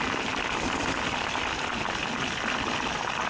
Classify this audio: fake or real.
real